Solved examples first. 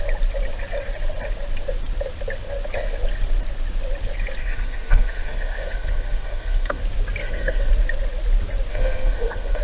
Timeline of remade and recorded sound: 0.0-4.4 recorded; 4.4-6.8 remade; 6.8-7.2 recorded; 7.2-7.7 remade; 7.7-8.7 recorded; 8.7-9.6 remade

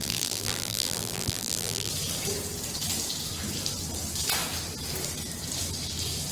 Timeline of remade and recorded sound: 0.0-1.9 remade; 1.9-6.3 recorded

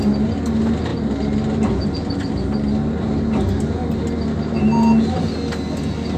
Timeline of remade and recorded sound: 0.0-6.2 recorded